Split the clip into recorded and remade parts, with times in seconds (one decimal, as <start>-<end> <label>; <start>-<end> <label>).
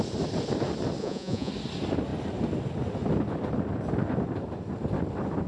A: 0.0-1.0 recorded; 1.0-1.5 remade; 1.5-5.5 recorded